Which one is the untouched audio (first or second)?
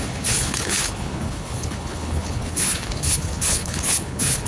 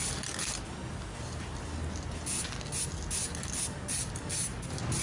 second